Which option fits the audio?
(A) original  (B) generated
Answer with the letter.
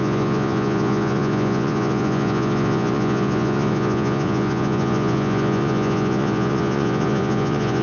B